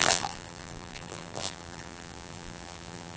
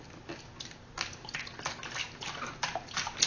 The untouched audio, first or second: second